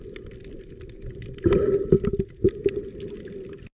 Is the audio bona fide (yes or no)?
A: no